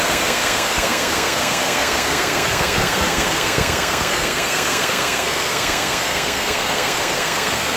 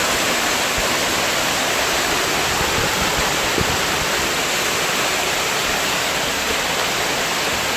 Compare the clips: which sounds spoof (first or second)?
first